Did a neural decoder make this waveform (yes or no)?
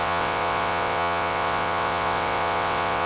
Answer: yes